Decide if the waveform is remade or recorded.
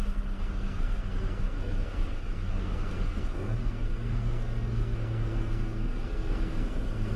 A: remade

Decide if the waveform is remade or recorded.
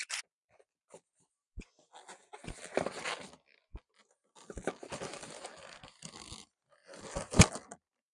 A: recorded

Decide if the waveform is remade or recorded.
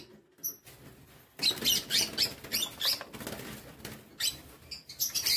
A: recorded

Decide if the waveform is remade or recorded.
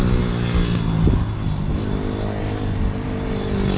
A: recorded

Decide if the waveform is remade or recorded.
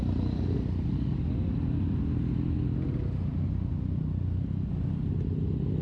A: recorded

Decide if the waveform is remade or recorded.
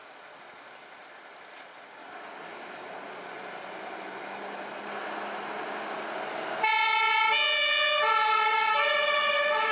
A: recorded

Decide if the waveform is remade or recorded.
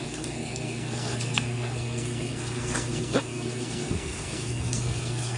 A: remade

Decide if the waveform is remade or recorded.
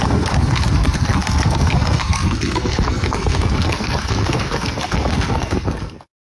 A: remade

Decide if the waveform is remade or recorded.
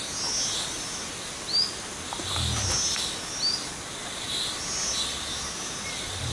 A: recorded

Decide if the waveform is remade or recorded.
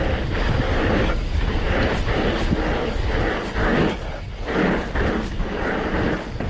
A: recorded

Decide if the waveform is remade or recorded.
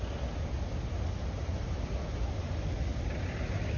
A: recorded